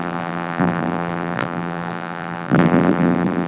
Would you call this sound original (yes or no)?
no